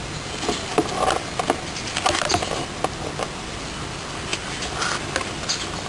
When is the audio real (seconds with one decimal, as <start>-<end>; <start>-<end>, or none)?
0.0-5.9